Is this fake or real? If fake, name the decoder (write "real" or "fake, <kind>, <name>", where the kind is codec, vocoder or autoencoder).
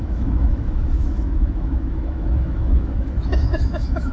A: fake, autoencoder, DAC-VAE